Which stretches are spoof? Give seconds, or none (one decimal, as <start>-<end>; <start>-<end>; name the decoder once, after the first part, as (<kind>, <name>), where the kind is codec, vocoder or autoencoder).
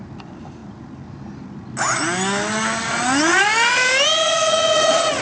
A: 4.2-5.2 (vocoder, Vocos)